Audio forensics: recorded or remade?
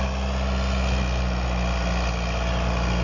recorded